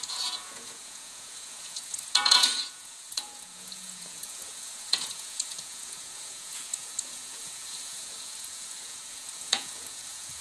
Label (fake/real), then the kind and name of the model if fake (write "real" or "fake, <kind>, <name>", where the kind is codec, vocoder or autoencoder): fake, vocoder, Vocos